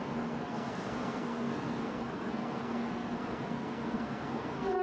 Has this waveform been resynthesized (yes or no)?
yes